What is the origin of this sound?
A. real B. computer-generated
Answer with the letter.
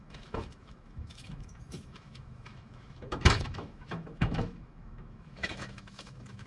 B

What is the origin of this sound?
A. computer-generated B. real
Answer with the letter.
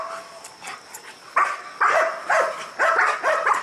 B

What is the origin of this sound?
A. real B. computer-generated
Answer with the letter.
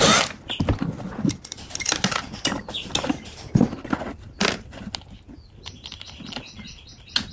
A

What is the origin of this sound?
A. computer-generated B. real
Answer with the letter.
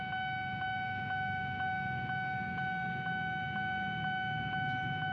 B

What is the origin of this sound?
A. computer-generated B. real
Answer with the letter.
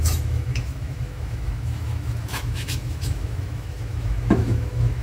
A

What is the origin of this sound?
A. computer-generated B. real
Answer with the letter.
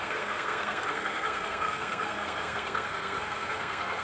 A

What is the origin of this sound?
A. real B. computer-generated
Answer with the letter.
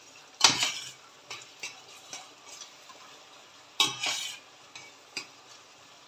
A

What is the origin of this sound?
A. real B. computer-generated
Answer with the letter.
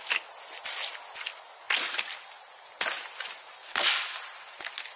A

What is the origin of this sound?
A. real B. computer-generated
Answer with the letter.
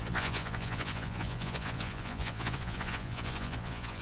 B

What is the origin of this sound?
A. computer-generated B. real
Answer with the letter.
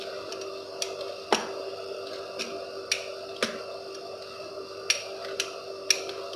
B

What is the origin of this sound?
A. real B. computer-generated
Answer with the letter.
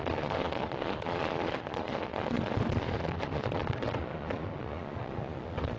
B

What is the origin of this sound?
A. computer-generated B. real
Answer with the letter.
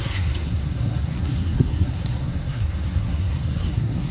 A